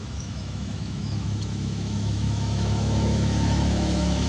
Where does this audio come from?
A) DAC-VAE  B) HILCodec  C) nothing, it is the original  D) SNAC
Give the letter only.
A